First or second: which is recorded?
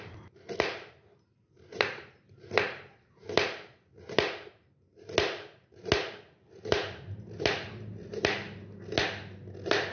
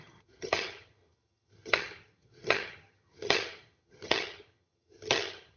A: first